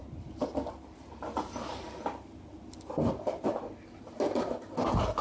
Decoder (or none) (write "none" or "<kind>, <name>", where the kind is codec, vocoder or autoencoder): none